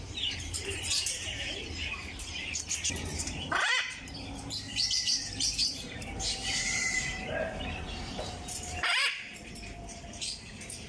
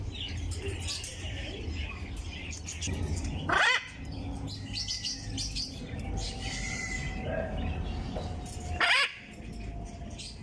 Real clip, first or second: second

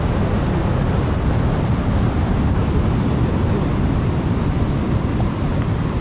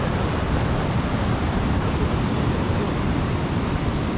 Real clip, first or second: first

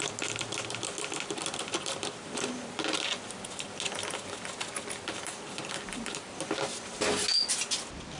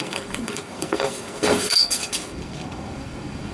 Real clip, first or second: first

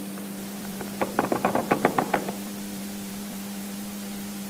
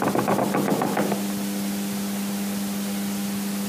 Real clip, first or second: second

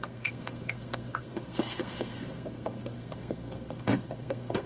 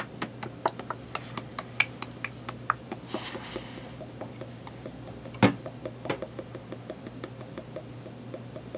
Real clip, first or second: second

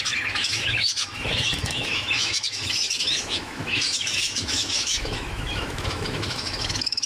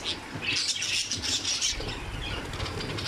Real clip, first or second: second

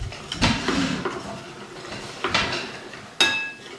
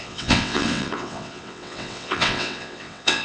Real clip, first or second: first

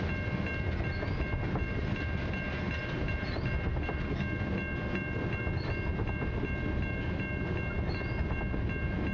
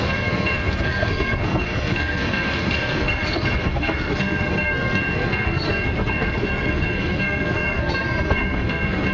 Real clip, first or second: first